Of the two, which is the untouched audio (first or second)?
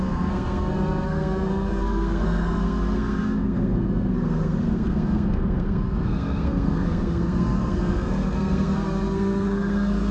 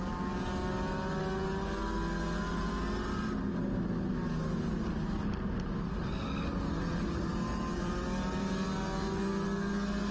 second